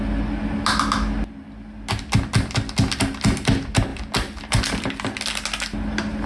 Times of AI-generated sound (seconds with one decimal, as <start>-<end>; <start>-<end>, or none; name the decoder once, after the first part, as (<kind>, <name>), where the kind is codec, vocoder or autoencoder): none